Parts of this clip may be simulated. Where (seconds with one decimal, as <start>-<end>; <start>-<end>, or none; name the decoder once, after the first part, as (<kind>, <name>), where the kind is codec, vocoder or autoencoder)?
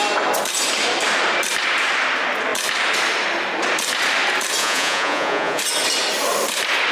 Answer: 4.6-5.6 (vocoder, Vocos)